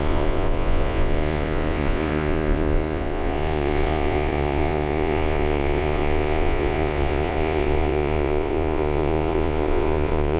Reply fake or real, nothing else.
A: fake